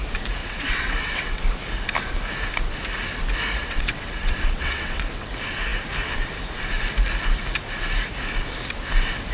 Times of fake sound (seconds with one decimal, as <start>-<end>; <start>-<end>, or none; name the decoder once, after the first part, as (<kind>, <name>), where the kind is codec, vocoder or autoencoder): 0.4-1.4 (vocoder, WaveNeXt); 3.6-5.3